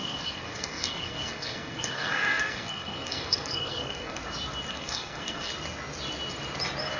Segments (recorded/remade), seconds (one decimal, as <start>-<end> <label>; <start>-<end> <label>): 0.0-4.2 remade; 4.2-4.7 recorded; 4.7-5.5 remade; 5.5-7.0 recorded